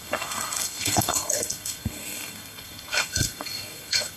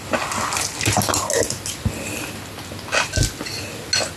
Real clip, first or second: second